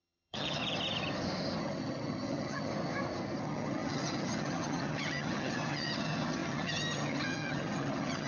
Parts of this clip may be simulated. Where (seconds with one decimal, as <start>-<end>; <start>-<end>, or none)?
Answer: 0.0-0.6; 1.6-2.7; 3.4-8.3